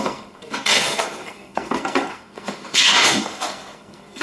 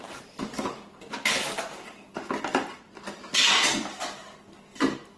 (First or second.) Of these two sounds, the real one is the second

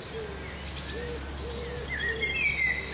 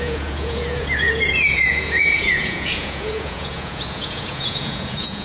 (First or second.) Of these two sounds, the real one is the first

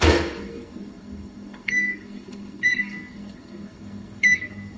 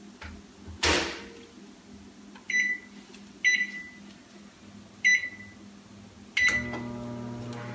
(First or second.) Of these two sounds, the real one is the second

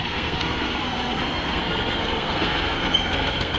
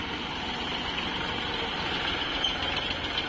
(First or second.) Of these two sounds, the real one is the second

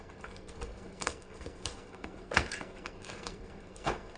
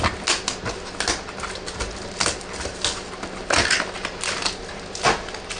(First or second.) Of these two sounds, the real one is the second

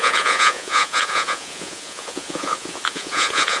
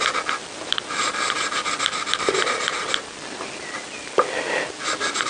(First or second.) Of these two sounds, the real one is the second